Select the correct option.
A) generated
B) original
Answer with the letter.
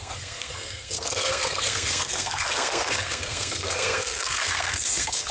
A